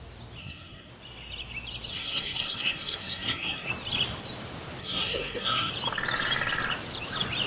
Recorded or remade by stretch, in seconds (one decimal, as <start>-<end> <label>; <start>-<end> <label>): 0.0-0.4 recorded; 0.4-0.9 remade; 0.9-1.9 recorded; 1.9-3.7 remade; 3.7-4.8 recorded; 4.8-5.7 remade; 5.7-7.5 recorded

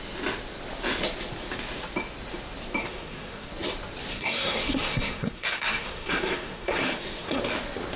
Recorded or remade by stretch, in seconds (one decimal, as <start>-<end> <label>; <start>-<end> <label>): 0.0-2.8 recorded; 2.8-3.5 remade; 3.5-4.1 recorded; 4.1-7.4 remade; 7.4-8.0 recorded

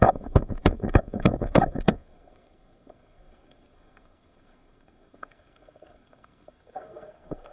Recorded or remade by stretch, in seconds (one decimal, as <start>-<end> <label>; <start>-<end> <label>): 0.0-7.5 remade